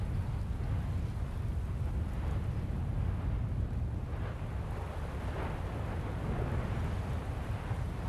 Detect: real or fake real